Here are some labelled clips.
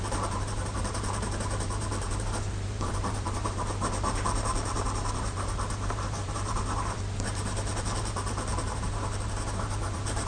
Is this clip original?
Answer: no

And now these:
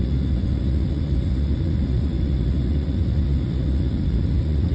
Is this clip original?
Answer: no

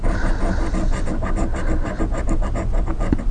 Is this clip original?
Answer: yes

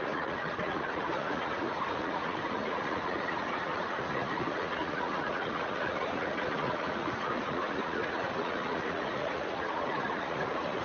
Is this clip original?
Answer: no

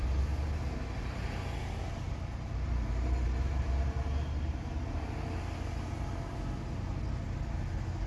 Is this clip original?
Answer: yes